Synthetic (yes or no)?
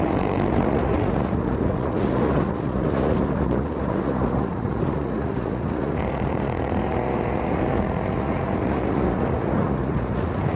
yes